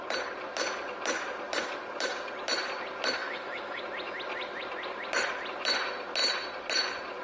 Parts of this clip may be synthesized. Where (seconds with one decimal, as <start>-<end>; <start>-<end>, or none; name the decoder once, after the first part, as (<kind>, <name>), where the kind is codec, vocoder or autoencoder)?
3.2-3.8 (autoencoder, DAC-VAE)